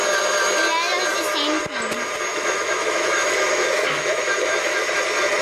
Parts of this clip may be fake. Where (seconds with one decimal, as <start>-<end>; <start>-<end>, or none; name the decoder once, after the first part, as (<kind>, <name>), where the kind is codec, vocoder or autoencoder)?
2.3-4.9 (autoencoder, DAC-VAE)